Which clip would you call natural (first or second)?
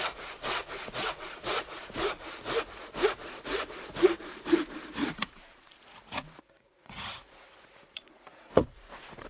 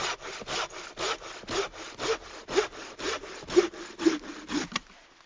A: second